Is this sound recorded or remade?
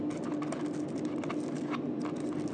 recorded